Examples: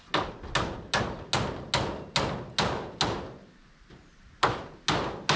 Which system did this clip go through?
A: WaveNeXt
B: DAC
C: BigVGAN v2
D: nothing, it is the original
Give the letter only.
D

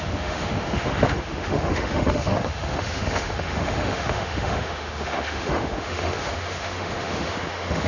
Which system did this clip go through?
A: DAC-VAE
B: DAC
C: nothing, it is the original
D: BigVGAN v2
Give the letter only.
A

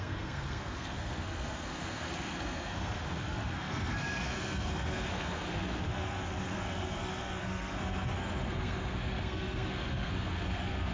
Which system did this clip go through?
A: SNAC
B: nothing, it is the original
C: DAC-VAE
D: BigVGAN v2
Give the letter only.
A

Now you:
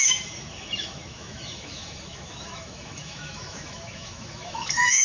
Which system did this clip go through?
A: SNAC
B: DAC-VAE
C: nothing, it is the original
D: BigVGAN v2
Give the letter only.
B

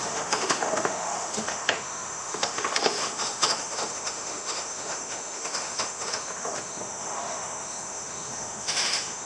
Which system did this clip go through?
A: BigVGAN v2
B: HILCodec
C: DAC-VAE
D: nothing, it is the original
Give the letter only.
C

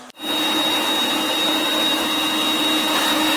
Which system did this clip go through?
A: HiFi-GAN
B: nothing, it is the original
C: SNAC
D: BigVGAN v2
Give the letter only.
B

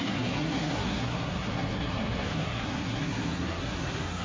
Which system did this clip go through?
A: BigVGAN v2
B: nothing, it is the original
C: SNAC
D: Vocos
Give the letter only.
C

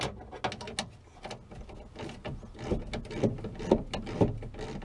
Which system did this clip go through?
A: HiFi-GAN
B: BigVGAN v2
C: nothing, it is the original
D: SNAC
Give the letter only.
C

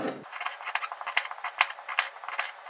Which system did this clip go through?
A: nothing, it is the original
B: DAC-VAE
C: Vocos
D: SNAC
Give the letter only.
A